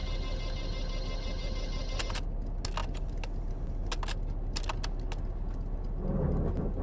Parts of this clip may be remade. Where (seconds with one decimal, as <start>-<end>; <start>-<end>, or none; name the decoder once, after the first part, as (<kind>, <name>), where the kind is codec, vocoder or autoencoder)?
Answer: none